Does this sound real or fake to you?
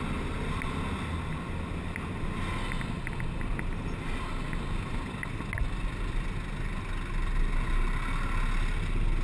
real